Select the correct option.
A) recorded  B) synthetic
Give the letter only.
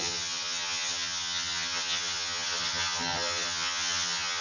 B